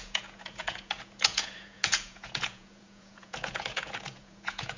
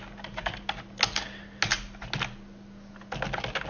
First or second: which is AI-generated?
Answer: first